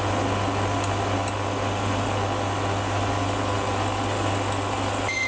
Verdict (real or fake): real